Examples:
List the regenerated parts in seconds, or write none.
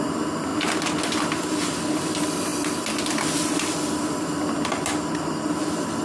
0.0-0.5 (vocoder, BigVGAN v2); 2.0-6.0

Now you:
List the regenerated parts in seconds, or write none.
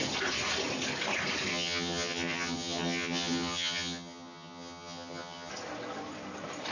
1.5-5.5 (vocoder, HiFi-GAN)